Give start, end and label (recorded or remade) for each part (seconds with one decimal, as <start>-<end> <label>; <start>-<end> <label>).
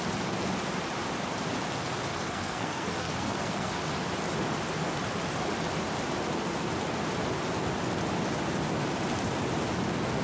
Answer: 0.0-2.1 recorded; 2.1-3.8 remade; 3.8-10.2 recorded